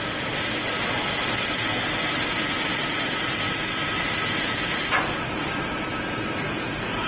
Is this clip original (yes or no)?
yes